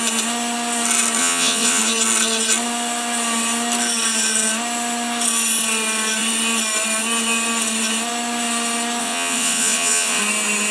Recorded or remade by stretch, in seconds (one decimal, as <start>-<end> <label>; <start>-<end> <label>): 0.0-1.2 recorded; 1.2-1.8 remade; 1.8-9.0 recorded; 9.0-10.2 remade; 10.2-10.7 recorded

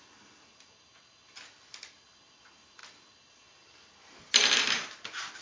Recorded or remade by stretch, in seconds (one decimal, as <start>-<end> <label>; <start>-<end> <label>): 0.0-5.4 recorded

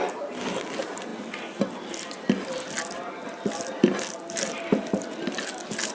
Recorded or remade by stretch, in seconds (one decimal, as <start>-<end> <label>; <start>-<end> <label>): 0.0-5.9 recorded

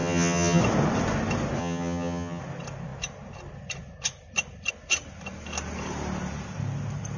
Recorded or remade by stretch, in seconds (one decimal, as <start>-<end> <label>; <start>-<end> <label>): 0.0-0.6 remade; 0.6-1.6 recorded; 1.6-2.4 remade; 2.4-7.2 recorded

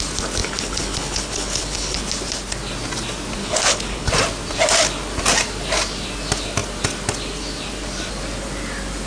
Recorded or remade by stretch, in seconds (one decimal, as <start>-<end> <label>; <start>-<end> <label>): 0.0-0.4 recorded; 0.4-2.0 remade; 2.0-3.4 recorded; 3.4-4.1 remade; 4.1-9.1 recorded

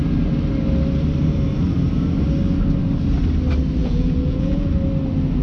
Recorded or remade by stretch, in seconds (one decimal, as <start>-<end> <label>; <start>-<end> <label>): 0.0-3.8 recorded; 3.8-4.7 remade; 4.7-5.4 recorded